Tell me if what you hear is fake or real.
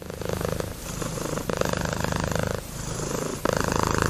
fake